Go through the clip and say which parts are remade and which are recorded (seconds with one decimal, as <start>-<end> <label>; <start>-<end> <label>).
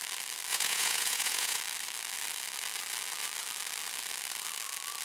0.0-0.5 recorded; 0.5-1.6 remade; 1.6-5.0 recorded